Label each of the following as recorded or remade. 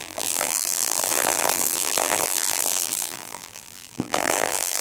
remade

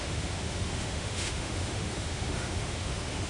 remade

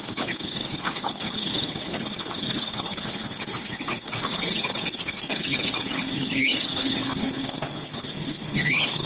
remade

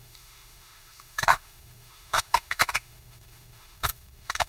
remade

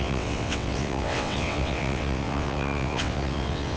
remade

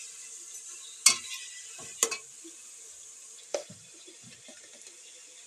recorded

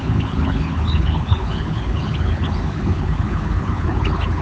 remade